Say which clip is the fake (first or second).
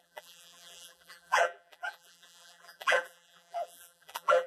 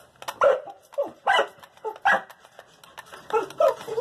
first